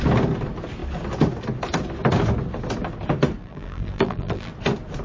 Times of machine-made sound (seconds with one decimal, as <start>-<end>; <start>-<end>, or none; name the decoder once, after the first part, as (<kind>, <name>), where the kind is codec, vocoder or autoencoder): 3.4-4.5 (vocoder, BigVGAN v2)